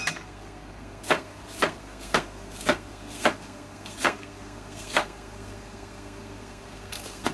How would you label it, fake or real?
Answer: fake